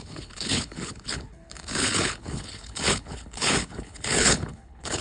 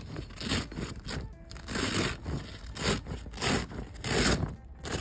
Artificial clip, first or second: first